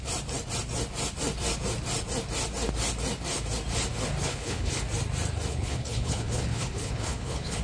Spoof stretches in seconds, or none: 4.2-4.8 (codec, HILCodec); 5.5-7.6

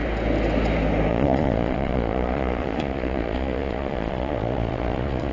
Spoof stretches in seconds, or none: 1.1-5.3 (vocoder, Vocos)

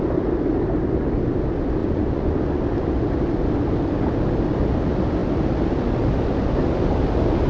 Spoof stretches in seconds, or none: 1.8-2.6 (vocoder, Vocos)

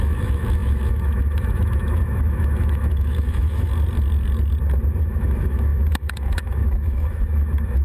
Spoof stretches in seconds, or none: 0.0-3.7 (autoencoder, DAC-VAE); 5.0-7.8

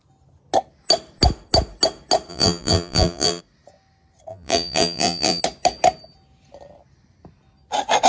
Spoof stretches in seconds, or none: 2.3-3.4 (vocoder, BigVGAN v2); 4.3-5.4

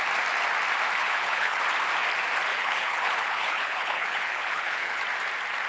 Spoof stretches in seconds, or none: 1.0-1.6 (codec, HILCodec); 2.5-5.0

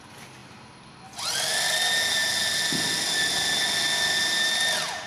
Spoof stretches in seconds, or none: none